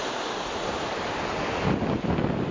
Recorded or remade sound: recorded